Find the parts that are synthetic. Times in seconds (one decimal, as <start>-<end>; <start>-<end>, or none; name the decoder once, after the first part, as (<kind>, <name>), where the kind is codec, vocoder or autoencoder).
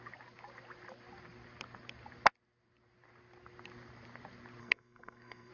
4.6-5.5 (codec, SNAC)